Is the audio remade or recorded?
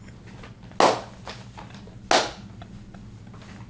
recorded